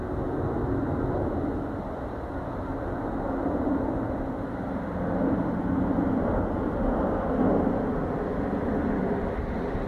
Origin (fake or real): real